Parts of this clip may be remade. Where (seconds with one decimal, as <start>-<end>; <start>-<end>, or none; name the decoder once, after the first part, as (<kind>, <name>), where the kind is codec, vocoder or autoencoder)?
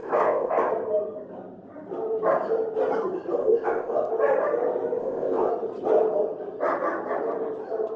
0.0-0.7 (codec, ZipCodec); 3.4-4.1; 5.0-5.5